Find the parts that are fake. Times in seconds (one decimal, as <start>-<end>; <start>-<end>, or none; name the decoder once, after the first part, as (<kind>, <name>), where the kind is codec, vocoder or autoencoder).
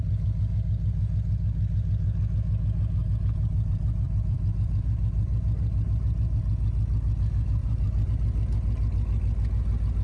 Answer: 3.0-6.4 (vocoder, BigVGAN v2); 7.6-8.1